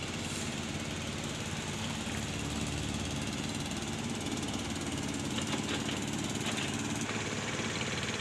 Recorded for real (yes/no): yes